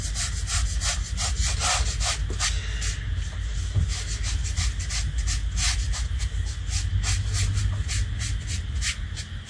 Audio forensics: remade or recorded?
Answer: recorded